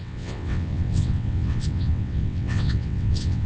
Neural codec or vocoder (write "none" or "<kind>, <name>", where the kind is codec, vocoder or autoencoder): vocoder, WaveNeXt